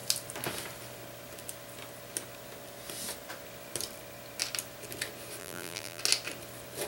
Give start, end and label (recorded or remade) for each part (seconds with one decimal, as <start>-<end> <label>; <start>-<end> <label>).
0.0-5.4 recorded; 5.4-6.0 remade; 6.0-6.9 recorded